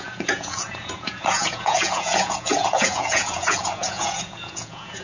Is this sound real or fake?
fake